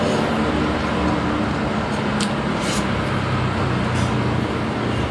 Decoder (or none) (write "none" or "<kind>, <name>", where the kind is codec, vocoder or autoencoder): none